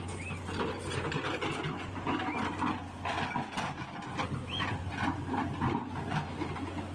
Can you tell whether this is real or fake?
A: real